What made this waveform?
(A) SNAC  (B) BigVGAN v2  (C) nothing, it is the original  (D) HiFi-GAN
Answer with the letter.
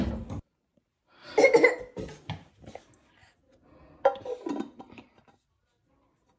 C